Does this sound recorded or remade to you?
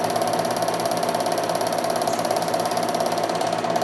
recorded